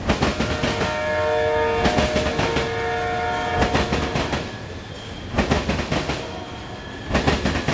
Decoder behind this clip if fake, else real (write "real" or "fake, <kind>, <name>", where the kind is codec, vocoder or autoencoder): real